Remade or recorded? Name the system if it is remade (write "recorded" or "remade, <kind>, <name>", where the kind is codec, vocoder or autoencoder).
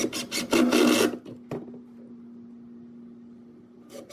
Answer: recorded